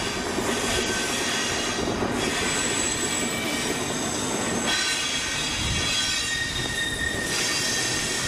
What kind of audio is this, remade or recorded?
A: recorded